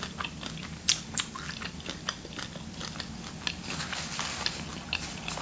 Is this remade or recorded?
recorded